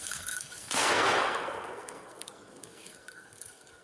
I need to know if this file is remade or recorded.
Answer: remade